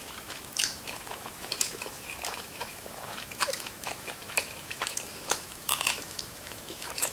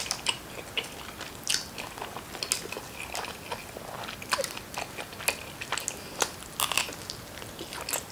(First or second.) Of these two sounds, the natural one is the second